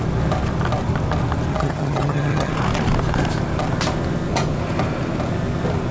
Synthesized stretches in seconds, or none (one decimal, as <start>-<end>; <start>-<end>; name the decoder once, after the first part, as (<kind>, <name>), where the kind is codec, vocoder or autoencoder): 1.5-2.5 (vocoder, HiFi-GAN)